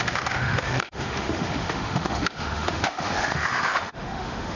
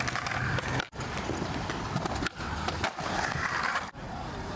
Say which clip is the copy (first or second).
first